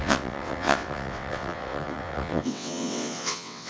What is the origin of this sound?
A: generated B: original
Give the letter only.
A